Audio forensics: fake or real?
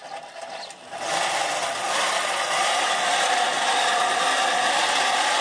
real